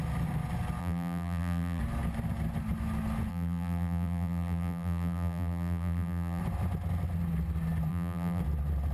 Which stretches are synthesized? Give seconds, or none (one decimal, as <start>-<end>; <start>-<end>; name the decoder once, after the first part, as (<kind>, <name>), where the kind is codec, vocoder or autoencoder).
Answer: 0.8-1.8 (vocoder, BigVGAN v2); 3.3-6.4; 7.9-8.4